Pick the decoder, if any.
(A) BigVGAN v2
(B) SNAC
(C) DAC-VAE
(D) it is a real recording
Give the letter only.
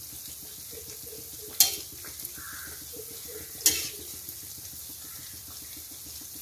D